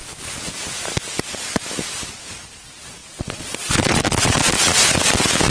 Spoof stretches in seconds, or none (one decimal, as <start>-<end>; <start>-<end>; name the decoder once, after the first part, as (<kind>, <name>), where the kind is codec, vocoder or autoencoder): 3.0-4.8 (vocoder, Vocos)